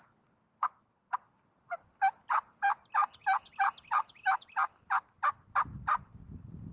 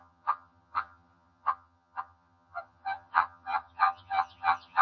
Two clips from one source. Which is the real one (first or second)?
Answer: first